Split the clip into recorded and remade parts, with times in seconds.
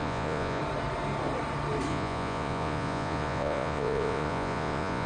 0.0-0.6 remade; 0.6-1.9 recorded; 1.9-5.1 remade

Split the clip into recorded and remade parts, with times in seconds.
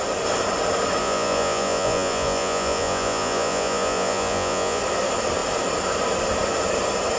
0.0-1.0 recorded; 1.0-4.8 remade; 4.8-7.2 recorded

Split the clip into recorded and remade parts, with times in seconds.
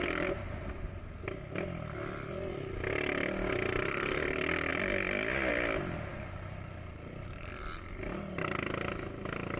0.0-9.6 recorded